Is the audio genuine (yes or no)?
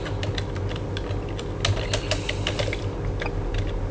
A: yes